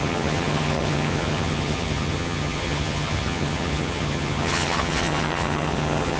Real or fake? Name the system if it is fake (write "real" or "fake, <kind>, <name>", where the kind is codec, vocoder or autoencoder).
fake, vocoder, HiFi-GAN